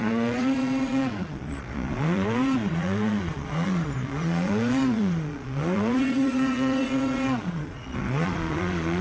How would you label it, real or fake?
fake